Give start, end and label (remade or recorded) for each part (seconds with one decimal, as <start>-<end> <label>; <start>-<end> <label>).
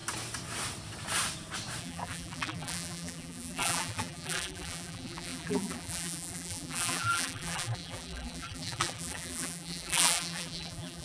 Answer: 0.0-1.8 recorded; 1.8-11.0 remade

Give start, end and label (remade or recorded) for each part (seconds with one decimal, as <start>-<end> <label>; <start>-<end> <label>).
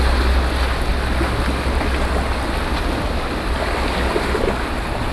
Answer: 0.0-5.1 recorded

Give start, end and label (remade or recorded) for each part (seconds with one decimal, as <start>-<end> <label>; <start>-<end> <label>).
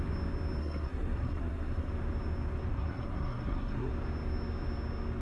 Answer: 0.0-0.6 recorded; 0.6-1.9 remade; 1.9-2.7 recorded; 2.7-3.9 remade; 3.9-5.2 recorded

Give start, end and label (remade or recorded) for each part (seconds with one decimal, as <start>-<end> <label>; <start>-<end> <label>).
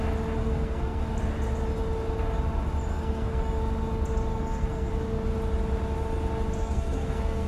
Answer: 0.0-0.4 recorded; 0.4-1.0 remade; 1.0-2.9 recorded; 2.9-3.6 remade; 3.6-4.3 recorded; 4.3-4.9 remade; 4.9-6.6 recorded; 6.6-7.5 remade